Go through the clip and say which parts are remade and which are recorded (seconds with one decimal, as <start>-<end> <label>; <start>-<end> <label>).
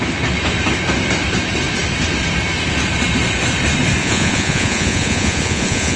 0.0-4.0 recorded; 4.0-6.0 remade